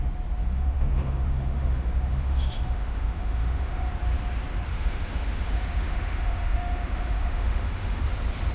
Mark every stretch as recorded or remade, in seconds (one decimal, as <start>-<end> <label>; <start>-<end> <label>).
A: 0.0-0.4 recorded; 0.4-3.9 remade; 3.9-4.7 recorded; 4.7-8.0 remade; 8.0-8.5 recorded